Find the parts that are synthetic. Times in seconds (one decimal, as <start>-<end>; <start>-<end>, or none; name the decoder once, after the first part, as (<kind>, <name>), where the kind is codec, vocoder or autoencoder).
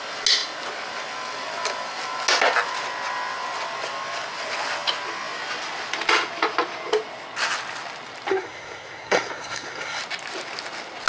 8.3-10.0 (codec, SNAC)